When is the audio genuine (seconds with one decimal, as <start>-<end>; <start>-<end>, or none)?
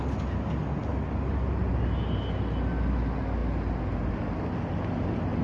0.0-5.4